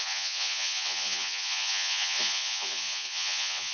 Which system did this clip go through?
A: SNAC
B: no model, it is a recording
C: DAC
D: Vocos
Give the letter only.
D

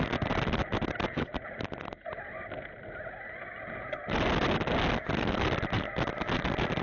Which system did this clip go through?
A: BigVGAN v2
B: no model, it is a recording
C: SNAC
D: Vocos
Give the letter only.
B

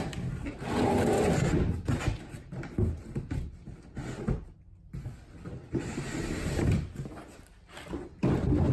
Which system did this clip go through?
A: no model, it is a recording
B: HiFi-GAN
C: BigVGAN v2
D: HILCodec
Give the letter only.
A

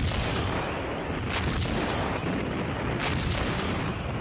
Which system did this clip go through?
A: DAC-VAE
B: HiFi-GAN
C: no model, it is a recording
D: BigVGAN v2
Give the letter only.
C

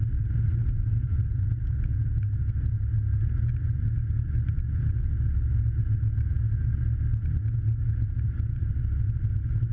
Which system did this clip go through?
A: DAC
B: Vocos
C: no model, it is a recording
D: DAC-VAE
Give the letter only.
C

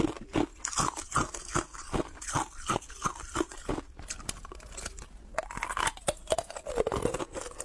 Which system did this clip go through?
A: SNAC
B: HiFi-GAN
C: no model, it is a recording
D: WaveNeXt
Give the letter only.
C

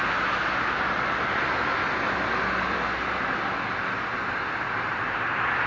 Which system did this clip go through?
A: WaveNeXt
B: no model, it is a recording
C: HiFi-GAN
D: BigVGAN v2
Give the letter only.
B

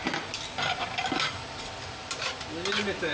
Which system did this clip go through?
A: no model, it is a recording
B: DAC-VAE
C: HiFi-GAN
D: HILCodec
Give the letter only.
A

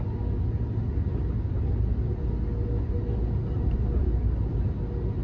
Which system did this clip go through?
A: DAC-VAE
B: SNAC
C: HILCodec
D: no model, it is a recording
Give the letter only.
D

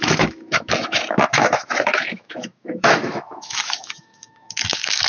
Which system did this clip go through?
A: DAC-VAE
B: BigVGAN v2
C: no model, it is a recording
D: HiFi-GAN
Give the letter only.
A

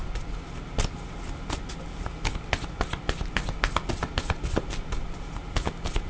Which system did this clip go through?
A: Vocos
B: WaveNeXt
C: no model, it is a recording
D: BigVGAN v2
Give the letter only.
C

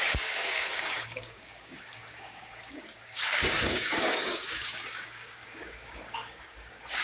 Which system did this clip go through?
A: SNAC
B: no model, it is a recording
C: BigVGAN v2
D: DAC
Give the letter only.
D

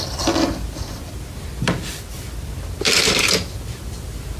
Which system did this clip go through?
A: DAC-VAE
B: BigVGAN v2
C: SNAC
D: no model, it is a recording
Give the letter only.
D